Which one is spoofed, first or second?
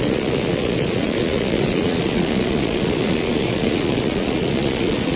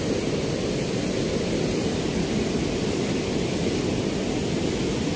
first